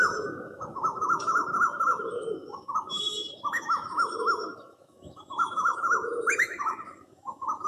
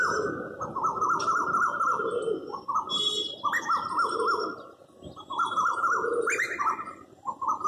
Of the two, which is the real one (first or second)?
second